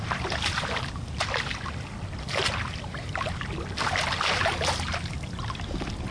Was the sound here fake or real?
real